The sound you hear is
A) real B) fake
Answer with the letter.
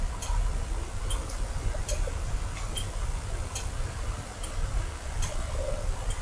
A